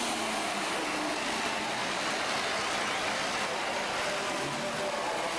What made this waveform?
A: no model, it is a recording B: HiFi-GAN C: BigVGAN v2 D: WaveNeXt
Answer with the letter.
A